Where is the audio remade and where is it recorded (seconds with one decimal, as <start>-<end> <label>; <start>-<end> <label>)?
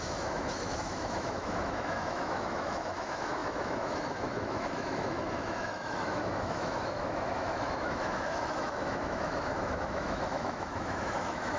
0.0-11.6 remade